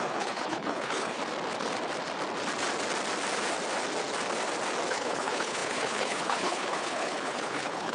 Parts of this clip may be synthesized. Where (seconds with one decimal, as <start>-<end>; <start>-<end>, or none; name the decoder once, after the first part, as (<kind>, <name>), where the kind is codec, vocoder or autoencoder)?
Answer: 0.0-1.2 (codec, HILCodec); 4.9-7.9